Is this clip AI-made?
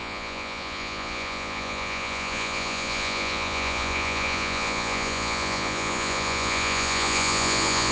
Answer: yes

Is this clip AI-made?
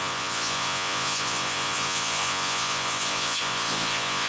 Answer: yes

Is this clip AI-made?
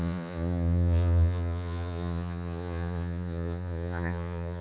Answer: yes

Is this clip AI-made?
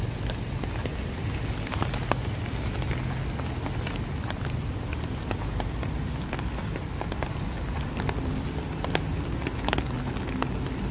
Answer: no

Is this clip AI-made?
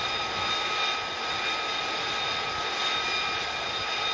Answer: no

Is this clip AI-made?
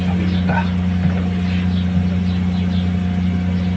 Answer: no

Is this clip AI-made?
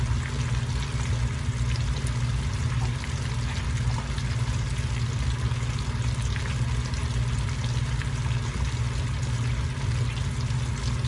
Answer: no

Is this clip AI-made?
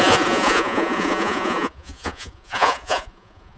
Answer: yes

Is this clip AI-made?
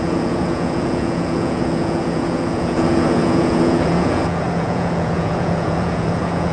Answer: yes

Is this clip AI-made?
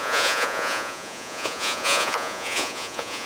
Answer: yes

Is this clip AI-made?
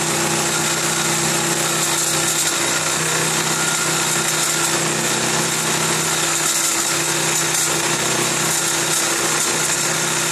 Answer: no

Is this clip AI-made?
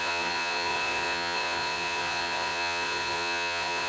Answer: yes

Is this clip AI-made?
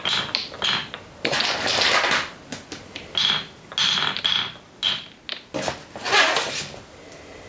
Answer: no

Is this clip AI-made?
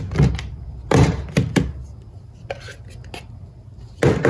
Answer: no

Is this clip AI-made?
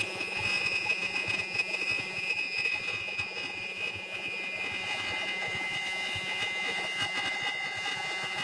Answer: yes